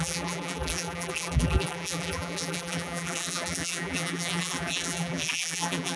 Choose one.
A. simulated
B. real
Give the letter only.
A